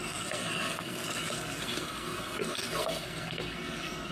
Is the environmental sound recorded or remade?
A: remade